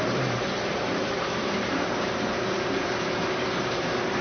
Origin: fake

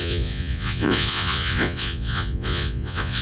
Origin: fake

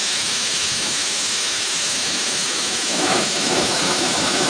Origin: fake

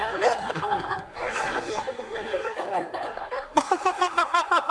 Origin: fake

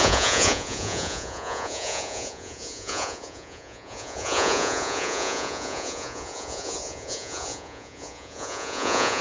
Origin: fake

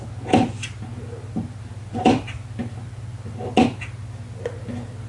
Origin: real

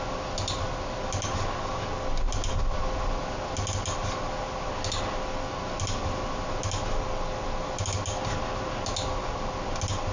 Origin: real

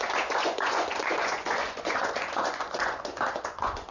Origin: fake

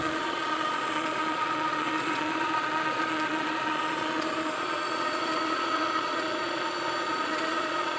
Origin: fake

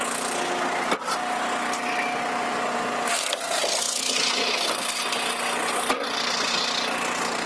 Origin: real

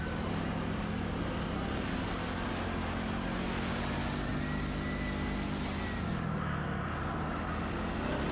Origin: real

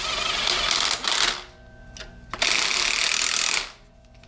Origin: real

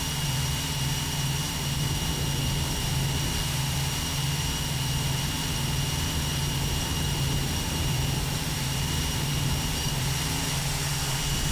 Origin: fake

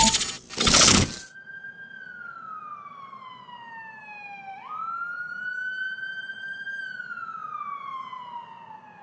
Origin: real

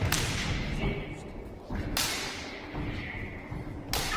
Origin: real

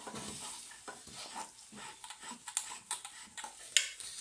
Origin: real